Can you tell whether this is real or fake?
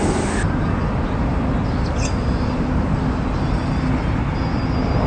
real